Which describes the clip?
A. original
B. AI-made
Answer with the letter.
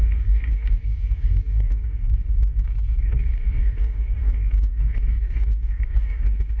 B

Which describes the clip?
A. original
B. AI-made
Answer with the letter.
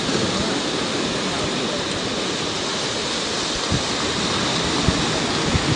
A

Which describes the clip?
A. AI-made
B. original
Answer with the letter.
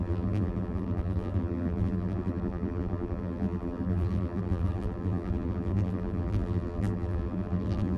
A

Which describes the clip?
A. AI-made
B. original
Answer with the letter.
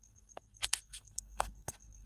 A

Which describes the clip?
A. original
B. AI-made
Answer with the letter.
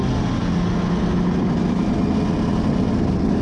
A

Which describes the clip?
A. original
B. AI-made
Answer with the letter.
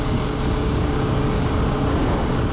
B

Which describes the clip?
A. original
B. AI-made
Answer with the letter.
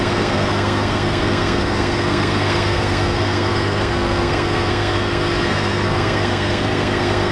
B